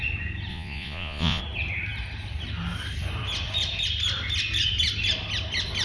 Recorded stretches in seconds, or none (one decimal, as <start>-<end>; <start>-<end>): 0.0-0.5; 1.4-5.8